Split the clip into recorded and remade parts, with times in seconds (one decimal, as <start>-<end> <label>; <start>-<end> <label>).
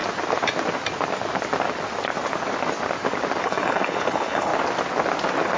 0.0-3.4 recorded; 3.4-4.5 remade; 4.5-5.6 recorded